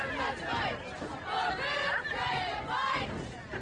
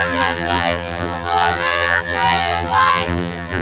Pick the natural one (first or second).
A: first